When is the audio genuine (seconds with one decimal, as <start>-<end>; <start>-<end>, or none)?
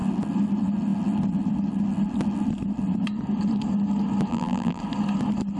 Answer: 0.0-4.3; 4.8-5.6